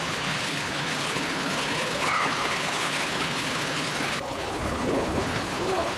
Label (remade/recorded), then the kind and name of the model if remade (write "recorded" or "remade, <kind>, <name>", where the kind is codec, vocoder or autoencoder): remade, codec, HILCodec